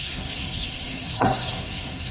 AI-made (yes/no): yes